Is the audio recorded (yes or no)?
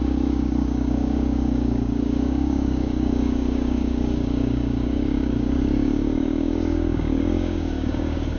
no